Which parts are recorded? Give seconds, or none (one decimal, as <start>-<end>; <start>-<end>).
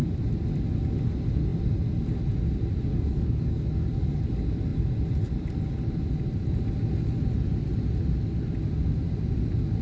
0.0-2.9; 4.2-9.8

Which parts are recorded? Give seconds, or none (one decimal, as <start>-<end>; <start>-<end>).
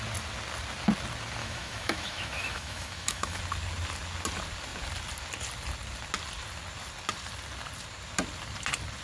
0.0-1.4; 3.4-9.0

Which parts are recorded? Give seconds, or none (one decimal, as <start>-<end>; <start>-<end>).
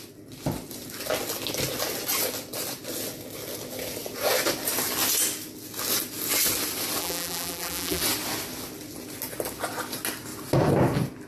0.0-7.0; 8.0-11.3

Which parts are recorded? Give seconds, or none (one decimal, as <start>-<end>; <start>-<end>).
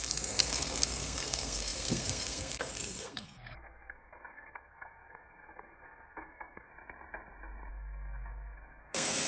6.7-7.7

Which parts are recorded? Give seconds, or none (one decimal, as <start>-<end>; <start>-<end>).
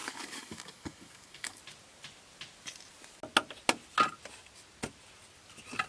1.6-5.9